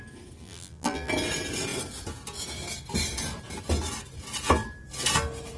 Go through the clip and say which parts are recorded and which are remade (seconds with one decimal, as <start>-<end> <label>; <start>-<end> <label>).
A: 0.0-0.4 recorded; 0.4-1.1 remade; 1.1-5.6 recorded